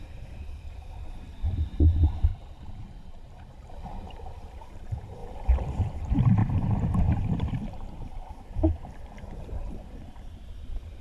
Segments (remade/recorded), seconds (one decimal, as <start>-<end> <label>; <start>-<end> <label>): 0.0-11.0 remade